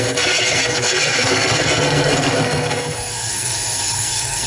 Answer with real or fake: fake